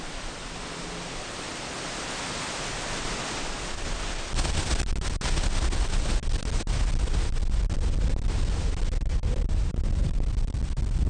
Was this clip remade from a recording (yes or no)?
no